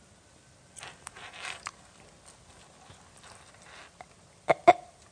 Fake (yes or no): no